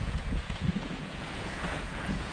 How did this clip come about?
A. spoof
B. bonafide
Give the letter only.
A